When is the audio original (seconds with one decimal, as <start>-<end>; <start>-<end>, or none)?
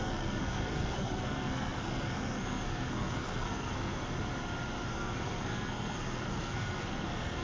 3.9-4.9